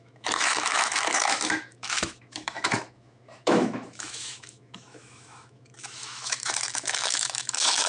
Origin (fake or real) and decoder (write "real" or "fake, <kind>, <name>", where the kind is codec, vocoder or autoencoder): fake, autoencoder, DAC-VAE